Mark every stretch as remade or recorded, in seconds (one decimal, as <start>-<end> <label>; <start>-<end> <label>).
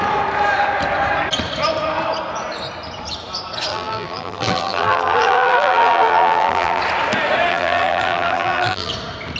0.0-3.7 recorded; 3.7-6.8 remade; 6.8-7.5 recorded; 7.5-8.9 remade; 8.9-9.4 recorded